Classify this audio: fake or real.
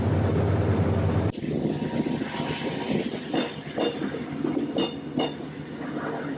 real